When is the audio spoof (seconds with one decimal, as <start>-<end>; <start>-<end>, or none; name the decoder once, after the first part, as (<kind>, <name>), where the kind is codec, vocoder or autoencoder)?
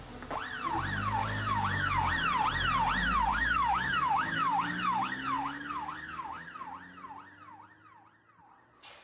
1.2-2.1 (codec, DAC); 3.3-6.5